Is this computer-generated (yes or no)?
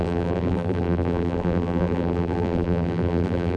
yes